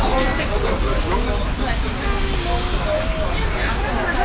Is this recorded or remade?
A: recorded